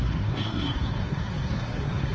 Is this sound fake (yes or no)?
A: yes